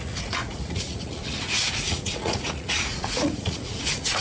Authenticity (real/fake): fake